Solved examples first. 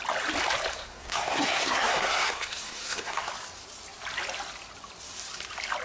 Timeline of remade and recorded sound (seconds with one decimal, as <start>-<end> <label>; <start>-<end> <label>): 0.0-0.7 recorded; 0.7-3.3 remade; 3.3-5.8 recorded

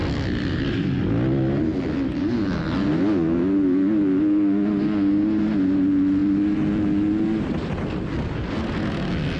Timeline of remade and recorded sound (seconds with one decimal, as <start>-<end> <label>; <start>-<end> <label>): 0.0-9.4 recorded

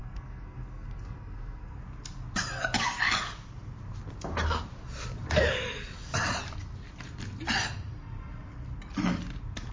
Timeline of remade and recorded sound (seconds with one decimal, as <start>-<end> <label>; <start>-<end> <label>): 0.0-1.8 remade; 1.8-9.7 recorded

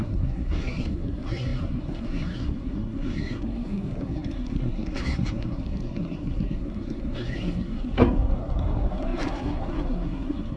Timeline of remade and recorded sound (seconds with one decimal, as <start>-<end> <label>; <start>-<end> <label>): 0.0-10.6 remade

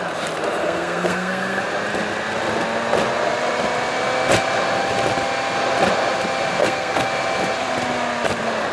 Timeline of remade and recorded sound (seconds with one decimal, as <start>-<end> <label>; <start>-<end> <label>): 0.0-0.6 recorded; 0.6-1.6 remade; 1.6-6.6 recorded; 6.6-7.1 remade; 7.1-8.7 recorded

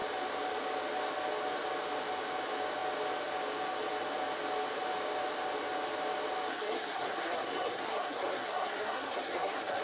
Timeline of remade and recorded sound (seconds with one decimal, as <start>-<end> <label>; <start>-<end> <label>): 0.0-6.5 recorded; 6.5-9.8 remade

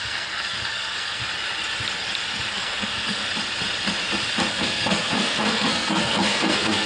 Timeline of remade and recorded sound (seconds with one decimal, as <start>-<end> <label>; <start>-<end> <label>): 0.0-1.2 remade; 1.2-2.5 recorded; 2.5-3.2 remade; 3.2-4.5 recorded; 4.5-6.9 remade